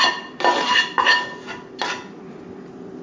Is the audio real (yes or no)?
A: yes